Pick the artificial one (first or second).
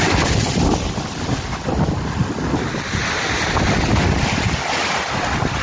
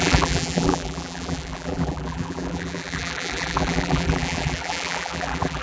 second